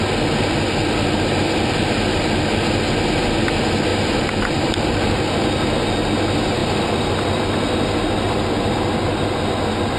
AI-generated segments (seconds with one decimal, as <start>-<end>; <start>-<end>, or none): 3.9-5.0